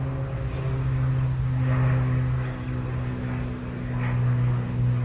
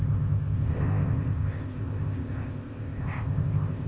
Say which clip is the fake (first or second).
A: second